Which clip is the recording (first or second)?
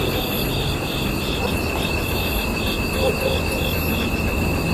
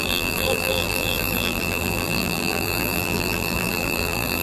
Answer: first